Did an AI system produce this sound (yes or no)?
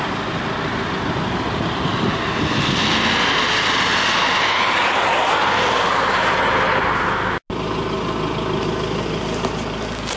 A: no